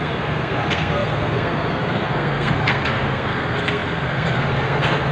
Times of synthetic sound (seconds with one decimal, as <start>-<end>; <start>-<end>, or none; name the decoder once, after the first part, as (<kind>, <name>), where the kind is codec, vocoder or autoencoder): 0.0-5.1 (codec, SNAC)